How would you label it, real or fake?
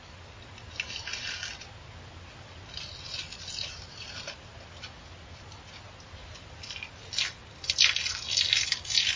real